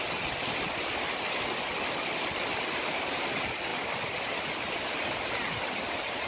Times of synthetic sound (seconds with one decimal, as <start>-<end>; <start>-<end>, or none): 0.4-1.9; 3.7-4.4